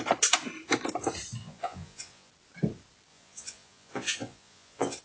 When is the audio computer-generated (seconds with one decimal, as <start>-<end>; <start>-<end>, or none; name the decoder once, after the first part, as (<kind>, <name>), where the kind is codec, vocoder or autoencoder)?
1.4-2.3 (vocoder, Vocos); 3.1-5.0